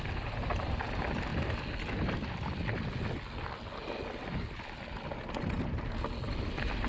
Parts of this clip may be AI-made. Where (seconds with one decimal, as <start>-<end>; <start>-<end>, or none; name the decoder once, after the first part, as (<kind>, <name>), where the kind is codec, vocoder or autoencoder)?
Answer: none

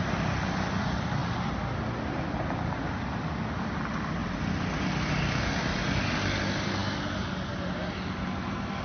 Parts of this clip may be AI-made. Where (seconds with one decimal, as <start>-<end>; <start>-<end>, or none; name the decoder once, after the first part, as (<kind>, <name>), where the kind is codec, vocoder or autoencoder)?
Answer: none

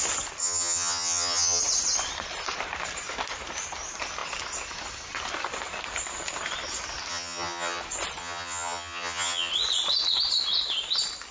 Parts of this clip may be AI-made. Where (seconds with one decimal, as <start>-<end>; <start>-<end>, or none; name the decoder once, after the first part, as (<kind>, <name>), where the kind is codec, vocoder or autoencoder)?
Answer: 0.4-1.6 (vocoder, HiFi-GAN); 7.1-7.8; 8.2-9.5

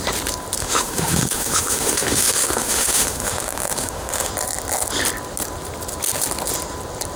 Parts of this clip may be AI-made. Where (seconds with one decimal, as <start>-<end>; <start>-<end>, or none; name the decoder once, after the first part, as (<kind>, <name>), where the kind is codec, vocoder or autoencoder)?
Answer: 0.6-4.3 (autoencoder, DAC-VAE)

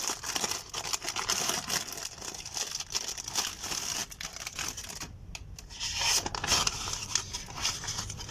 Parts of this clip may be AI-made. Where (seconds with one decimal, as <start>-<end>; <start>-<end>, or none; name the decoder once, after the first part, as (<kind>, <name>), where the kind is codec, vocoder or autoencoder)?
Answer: none